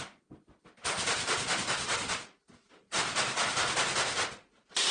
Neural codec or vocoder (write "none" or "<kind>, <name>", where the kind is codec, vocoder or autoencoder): none